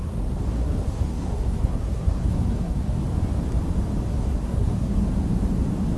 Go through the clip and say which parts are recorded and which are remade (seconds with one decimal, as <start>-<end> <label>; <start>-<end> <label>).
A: 0.0-3.0 remade; 3.0-4.1 recorded; 4.1-4.9 remade; 4.9-6.0 recorded